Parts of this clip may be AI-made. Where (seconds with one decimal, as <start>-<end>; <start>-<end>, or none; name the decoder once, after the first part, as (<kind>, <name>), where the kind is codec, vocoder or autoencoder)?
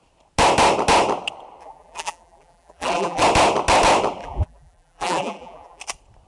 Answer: 1.6-3.2 (vocoder, BigVGAN v2); 4.2-5.8